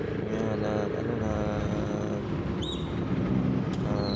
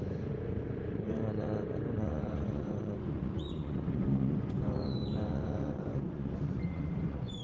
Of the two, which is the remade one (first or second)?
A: second